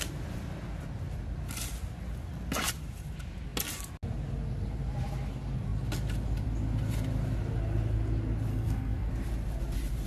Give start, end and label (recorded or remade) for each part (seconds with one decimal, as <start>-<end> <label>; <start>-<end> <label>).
0.0-8.5 recorded; 8.5-9.1 remade; 9.1-10.1 recorded